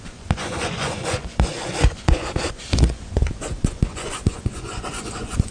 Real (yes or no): no